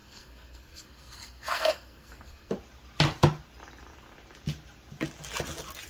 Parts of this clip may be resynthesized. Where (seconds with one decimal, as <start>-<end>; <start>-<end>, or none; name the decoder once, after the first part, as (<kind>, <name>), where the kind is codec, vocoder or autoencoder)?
0.0-2.5 (codec, SNAC)